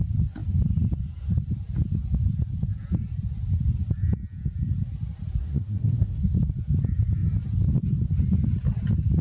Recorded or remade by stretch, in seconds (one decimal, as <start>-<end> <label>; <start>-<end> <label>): 0.0-5.4 recorded; 5.4-6.2 remade; 6.2-9.2 recorded